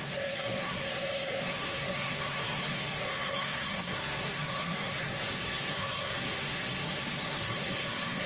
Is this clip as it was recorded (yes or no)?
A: no